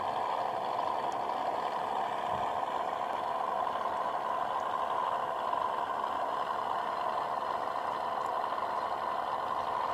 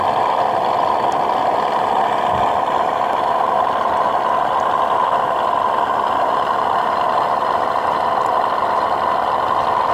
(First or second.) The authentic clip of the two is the first